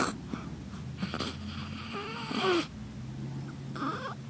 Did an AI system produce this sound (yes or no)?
no